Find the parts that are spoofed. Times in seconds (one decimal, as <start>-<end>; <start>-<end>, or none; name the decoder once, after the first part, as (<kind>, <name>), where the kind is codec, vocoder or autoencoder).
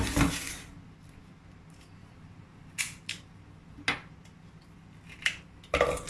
none